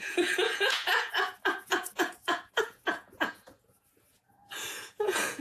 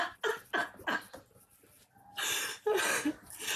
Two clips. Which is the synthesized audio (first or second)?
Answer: first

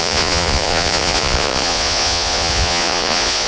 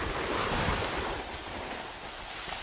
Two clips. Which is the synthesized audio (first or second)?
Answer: first